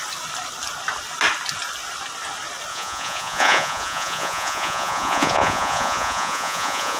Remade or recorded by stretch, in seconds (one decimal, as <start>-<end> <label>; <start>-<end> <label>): 0.0-2.7 recorded; 2.7-7.0 remade